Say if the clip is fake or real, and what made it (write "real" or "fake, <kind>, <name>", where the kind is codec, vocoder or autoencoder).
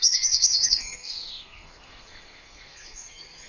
fake, codec, SNAC